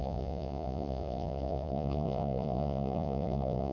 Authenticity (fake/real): fake